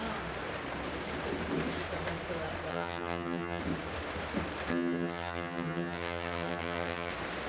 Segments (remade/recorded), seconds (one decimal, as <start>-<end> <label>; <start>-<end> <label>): 0.0-2.7 recorded; 2.7-3.6 remade; 3.6-4.7 recorded; 4.7-7.1 remade; 7.1-7.5 recorded